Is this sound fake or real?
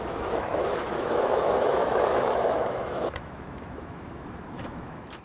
fake